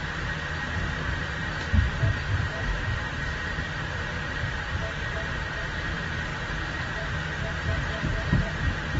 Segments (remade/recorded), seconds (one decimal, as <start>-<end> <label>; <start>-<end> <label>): 0.0-1.4 recorded; 1.4-5.6 remade; 5.6-6.3 recorded; 6.3-6.9 remade; 6.9-9.0 recorded